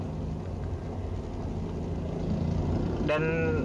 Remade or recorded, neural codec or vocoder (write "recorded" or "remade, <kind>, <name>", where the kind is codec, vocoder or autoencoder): recorded